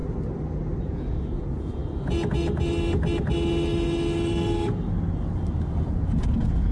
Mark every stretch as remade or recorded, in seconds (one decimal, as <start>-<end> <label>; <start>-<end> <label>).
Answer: 0.0-0.8 recorded; 0.8-1.8 remade; 1.8-5.8 recorded; 5.8-6.7 remade